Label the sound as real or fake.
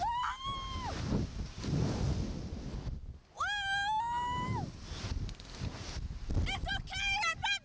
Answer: real